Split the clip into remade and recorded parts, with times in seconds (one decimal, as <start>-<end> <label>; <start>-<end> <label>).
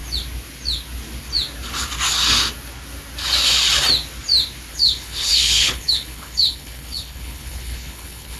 0.0-4.7 recorded; 4.7-8.4 remade